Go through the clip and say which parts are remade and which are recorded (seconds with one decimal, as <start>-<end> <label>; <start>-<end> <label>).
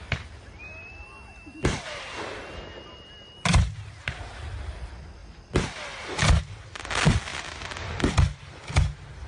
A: 0.0-9.3 recorded